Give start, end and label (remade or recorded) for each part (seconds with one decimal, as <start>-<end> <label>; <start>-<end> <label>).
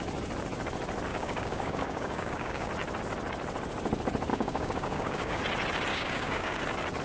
0.0-1.1 recorded; 1.1-2.7 remade; 2.7-4.3 recorded; 4.3-5.4 remade; 5.4-5.9 recorded; 5.9-6.6 remade; 6.6-7.0 recorded